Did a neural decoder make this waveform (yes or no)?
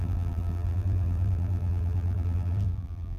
yes